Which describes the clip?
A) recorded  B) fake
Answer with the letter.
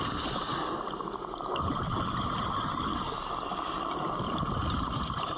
A